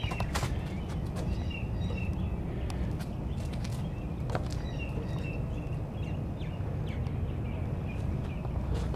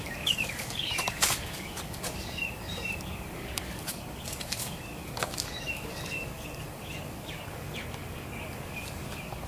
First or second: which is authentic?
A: first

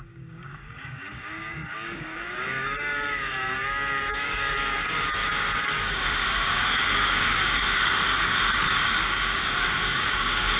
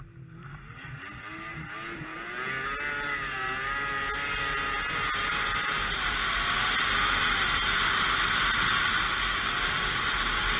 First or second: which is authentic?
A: second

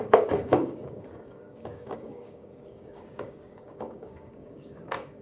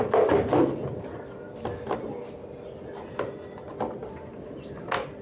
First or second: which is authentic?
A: second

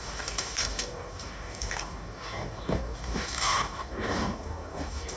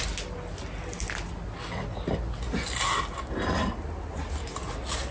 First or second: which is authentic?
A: second